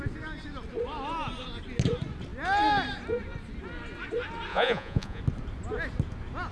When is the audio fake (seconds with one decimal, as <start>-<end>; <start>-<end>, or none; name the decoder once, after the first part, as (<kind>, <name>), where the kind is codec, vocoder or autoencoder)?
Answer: 4.5-5.2 (vocoder, Vocos)